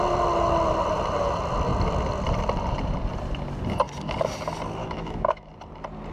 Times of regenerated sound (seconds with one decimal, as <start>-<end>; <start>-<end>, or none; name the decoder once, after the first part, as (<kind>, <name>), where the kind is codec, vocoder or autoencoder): 4.8-5.5 (autoencoder, DAC-VAE)